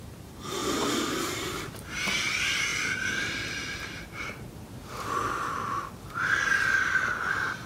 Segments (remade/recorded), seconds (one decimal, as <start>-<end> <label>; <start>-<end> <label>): 0.0-0.6 recorded; 0.6-1.7 remade; 1.7-2.7 recorded; 2.7-7.3 remade; 7.3-7.7 recorded